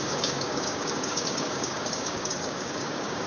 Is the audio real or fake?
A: fake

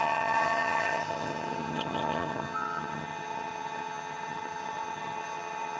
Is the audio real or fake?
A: fake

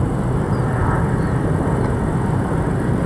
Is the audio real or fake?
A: real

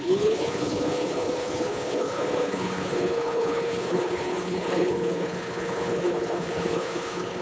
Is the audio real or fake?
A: fake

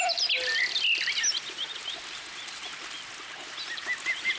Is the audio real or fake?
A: real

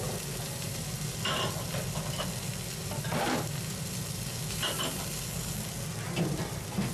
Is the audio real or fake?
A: real